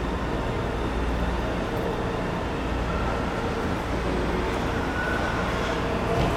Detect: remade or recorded recorded